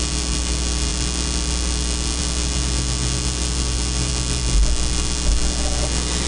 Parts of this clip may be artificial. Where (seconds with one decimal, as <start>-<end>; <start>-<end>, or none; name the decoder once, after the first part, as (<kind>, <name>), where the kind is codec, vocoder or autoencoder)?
none